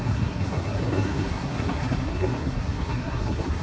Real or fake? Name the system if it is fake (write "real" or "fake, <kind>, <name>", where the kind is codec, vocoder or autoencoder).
fake, codec, SNAC